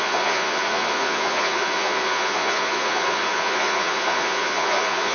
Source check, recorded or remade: remade